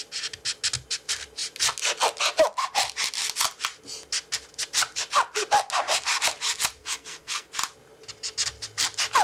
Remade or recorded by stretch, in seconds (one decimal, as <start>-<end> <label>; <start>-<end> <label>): 0.0-6.8 recorded; 6.8-7.5 remade; 7.5-9.2 recorded